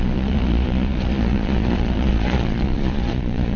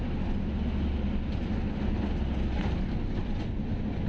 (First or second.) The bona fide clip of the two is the second